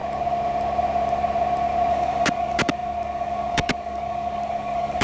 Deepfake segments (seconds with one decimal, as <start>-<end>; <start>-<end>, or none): 1.9-5.0